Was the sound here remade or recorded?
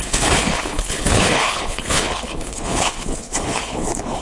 remade